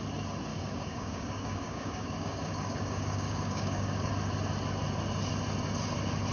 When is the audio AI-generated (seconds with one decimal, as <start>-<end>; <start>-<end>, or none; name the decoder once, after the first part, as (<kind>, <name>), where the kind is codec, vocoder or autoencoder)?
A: 0.5-4.1 (codec, DAC)

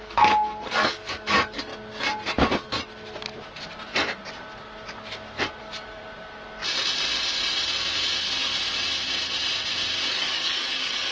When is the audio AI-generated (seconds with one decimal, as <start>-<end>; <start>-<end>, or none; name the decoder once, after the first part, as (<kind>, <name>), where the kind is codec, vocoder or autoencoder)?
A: 0.0-1.7 (codec, DAC); 5.6-6.0; 10.1-11.1

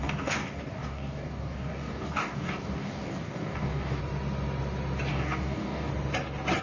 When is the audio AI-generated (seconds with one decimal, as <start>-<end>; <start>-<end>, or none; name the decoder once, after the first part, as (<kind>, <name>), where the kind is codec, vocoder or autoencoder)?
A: 0.0-4.0 (codec, DAC); 5.1-5.9

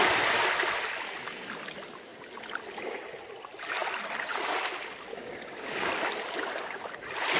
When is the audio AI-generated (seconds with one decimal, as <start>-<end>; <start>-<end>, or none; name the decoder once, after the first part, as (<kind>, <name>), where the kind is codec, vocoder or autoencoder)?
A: 5.1-5.9 (codec, DAC)

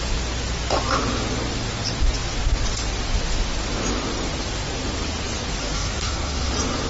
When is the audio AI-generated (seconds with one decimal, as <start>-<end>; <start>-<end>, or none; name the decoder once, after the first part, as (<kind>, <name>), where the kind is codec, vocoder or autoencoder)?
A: 5.6-6.5 (codec, DAC)

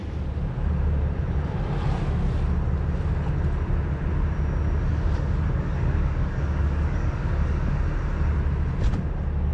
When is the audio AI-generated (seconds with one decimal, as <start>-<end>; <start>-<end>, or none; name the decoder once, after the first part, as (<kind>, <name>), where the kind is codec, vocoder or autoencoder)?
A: 4.9-7.8 (codec, DAC)

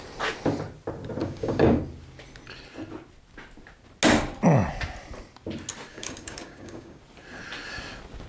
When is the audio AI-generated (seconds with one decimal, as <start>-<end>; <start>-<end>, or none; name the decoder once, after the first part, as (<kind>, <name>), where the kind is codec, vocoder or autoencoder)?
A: 1.2-1.8 (codec, DAC); 5.9-7.0

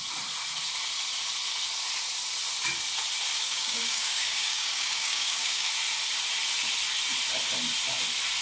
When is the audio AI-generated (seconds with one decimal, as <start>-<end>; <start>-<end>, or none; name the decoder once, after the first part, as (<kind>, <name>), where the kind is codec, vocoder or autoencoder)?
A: 3.4-5.7 (codec, DAC)